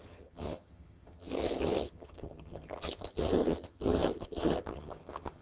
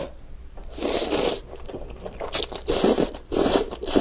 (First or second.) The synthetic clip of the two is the first